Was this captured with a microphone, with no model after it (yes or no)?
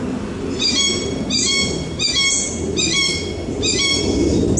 yes